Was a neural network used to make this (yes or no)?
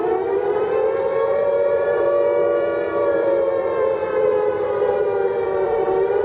yes